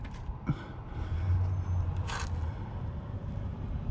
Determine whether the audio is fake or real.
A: real